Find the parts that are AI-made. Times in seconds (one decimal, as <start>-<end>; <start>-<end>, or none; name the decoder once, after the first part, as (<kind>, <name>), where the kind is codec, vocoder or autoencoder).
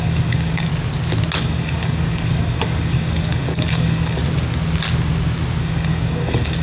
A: 0.0-0.7 (codec, DAC); 1.4-4.2; 5.6-6.6